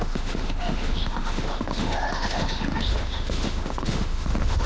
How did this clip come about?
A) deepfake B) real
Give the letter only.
A